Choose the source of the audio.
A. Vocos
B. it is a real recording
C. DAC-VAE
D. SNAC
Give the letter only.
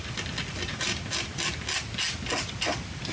B